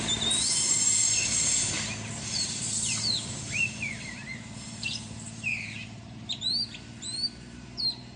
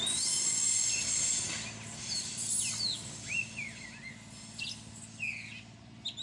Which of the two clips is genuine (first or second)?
second